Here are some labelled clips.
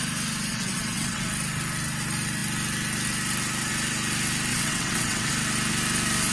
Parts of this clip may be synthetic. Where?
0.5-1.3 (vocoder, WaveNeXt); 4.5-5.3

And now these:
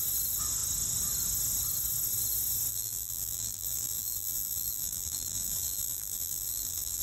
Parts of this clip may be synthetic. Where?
2.7-7.0 (vocoder, BigVGAN v2)

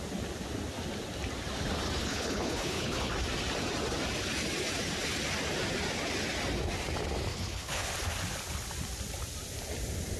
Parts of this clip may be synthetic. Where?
2.0-3.1 (codec, HILCodec); 7.3-7.9

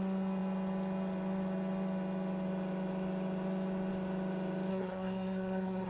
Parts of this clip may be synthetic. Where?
4.7-5.9 (codec, SNAC)

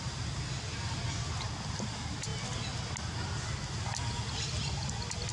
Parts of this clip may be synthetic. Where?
none

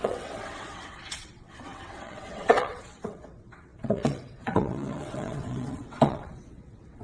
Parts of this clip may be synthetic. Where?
0.0-7.0 (vocoder, WaveNeXt)